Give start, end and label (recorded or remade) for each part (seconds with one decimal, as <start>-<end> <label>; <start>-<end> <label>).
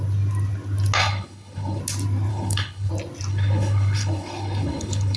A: 0.0-1.0 recorded; 1.0-1.8 remade; 1.8-2.3 recorded; 2.3-2.9 remade; 2.9-3.3 recorded; 3.3-5.2 remade